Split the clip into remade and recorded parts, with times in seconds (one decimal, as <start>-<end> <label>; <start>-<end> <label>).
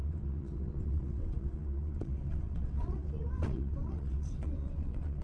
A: 0.0-5.2 remade